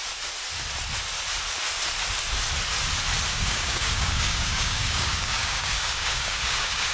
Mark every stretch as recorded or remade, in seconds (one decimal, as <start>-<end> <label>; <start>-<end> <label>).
0.0-3.3 recorded; 3.3-6.9 remade